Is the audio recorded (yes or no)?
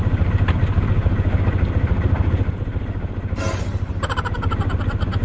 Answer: yes